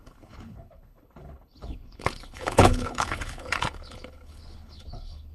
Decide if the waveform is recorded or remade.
remade